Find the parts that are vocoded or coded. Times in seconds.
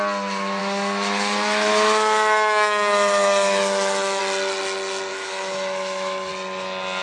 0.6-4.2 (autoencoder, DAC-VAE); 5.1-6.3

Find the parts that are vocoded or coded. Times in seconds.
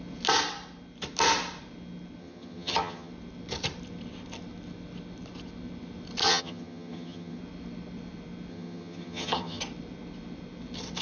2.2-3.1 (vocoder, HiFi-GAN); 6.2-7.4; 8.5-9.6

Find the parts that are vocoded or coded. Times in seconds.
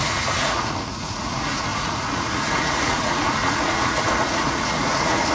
0.0-5.3 (vocoder, Vocos)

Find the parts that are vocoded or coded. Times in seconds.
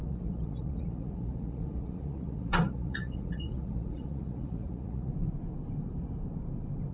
0.0-5.1 (vocoder, Vocos)